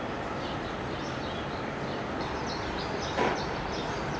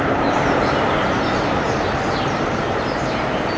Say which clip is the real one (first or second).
first